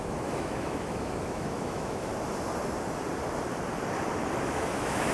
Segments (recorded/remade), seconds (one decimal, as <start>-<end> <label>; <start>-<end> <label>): 0.0-2.1 remade; 2.1-4.4 recorded; 4.4-5.1 remade

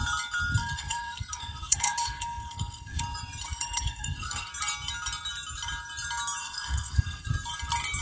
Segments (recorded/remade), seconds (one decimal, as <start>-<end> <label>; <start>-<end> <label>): 0.0-0.6 recorded; 0.6-3.0 remade; 3.0-3.5 recorded; 3.5-4.5 remade; 4.5-6.4 recorded; 6.4-7.3 remade; 7.3-8.0 recorded

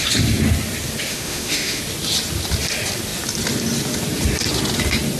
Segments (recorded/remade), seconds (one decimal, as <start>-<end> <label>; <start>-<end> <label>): 0.0-1.1 recorded; 1.1-1.8 remade; 1.8-5.2 recorded

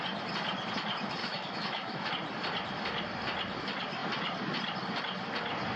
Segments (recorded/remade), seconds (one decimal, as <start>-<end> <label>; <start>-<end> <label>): 0.0-1.2 recorded; 1.2-2.1 remade; 2.1-5.8 recorded

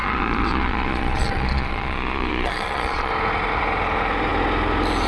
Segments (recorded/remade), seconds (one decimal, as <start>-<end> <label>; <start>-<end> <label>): 0.0-3.1 remade; 3.1-5.1 recorded